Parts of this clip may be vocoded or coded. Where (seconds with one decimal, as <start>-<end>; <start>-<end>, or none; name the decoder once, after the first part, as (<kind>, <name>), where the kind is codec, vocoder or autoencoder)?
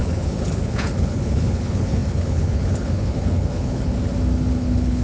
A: 0.0-3.9 (codec, HILCodec); 4.5-5.0